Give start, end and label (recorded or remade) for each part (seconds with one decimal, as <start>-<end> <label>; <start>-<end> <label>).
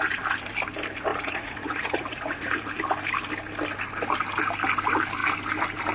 0.0-1.1 recorded; 1.1-2.7 remade; 2.7-5.9 recorded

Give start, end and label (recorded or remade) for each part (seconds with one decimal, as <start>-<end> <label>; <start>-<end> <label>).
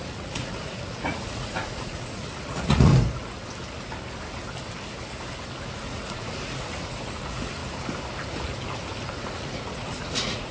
0.0-2.9 remade; 2.9-5.6 recorded; 5.6-7.6 remade; 7.6-9.3 recorded; 9.3-10.5 remade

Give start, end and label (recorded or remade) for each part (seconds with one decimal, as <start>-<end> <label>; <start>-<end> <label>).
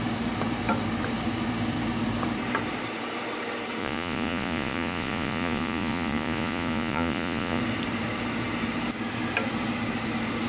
0.0-3.8 recorded; 3.8-7.6 remade; 7.6-10.5 recorded